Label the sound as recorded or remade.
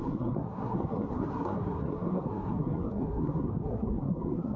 remade